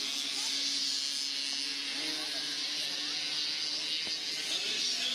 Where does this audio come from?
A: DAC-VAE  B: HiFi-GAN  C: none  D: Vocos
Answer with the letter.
C